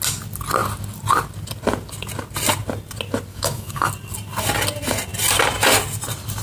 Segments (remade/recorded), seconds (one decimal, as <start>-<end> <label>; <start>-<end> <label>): 0.0-3.3 recorded; 3.3-3.9 remade; 3.9-6.4 recorded